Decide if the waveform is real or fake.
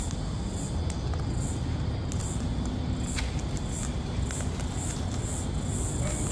real